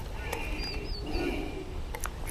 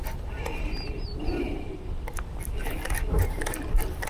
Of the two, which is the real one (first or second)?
first